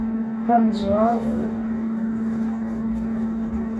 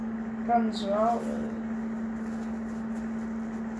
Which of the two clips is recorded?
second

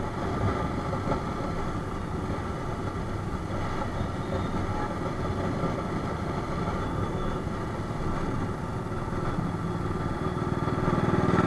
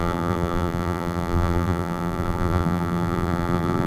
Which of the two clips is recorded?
first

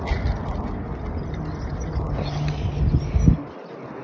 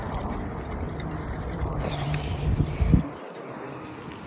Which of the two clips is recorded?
first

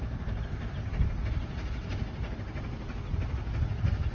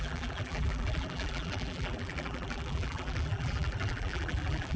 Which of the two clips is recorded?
first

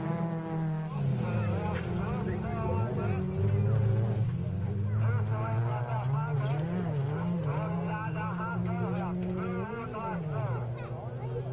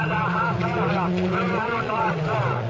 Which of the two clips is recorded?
first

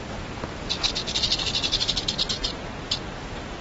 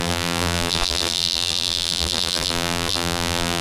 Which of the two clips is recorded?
first